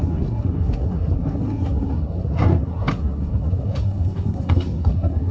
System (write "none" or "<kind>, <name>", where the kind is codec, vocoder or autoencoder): codec, SNAC